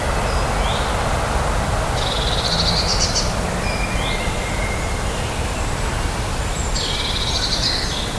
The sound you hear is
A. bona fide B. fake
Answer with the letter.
A